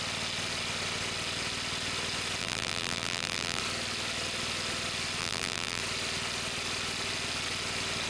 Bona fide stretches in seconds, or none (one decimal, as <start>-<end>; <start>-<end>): 0.0-2.4; 3.6-5.2; 5.8-8.1